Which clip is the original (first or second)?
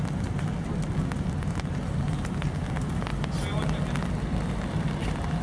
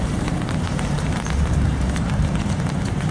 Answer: first